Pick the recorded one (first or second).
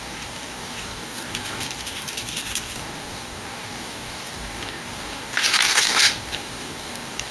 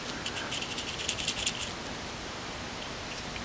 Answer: second